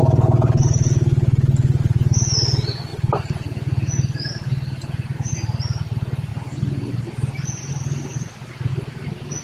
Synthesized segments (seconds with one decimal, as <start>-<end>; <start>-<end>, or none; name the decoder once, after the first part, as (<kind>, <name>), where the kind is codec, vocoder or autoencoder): none